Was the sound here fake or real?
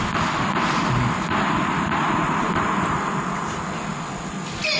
real